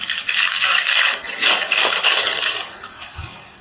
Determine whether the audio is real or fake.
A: fake